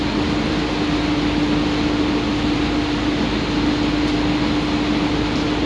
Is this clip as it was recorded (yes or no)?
yes